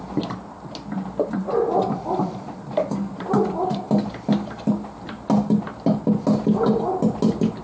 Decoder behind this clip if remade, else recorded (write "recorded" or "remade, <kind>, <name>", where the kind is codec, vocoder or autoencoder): recorded